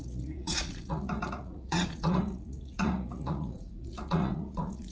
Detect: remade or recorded remade